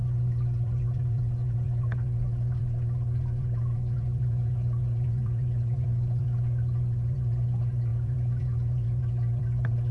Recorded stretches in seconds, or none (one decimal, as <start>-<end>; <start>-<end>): none